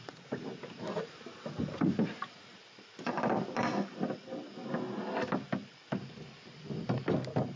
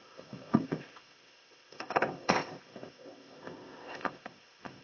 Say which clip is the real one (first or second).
first